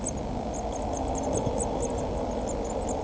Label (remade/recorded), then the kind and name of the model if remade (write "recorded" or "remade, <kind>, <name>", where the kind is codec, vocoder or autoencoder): recorded